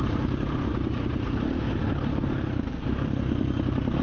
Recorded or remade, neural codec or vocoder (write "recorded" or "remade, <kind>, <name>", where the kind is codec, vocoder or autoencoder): remade, vocoder, BigVGAN v2